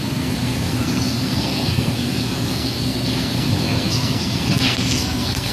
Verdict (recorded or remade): remade